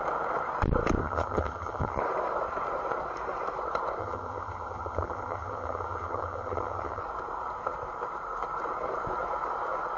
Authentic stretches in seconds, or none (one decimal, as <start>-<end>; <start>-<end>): 0.0-1.0; 2.0-4.0; 7.0-10.0

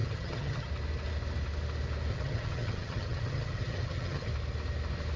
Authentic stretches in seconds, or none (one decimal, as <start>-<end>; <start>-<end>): 0.7-2.1; 4.3-5.2